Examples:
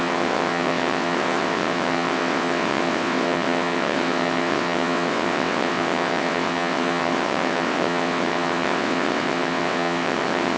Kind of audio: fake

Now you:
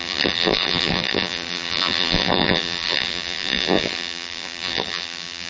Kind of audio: fake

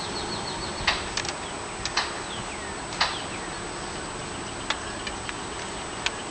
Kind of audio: real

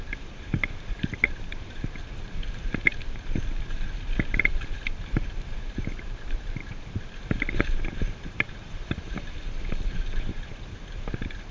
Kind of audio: fake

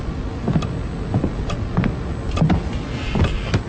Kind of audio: real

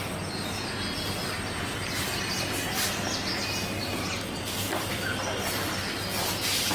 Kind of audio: real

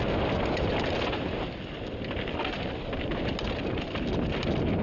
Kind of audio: real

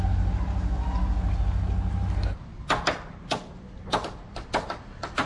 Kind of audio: real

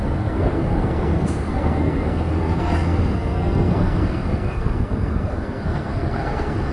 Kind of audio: fake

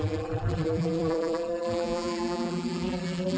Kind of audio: fake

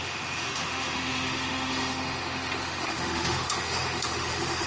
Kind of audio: fake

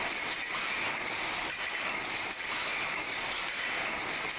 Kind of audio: real